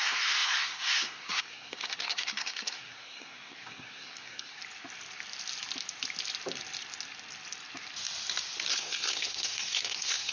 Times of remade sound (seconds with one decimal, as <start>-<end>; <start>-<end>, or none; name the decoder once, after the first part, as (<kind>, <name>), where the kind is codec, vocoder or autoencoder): 0.0-4.6 (codec, SNAC); 8.7-10.3